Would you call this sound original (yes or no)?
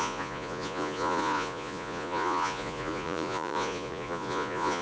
no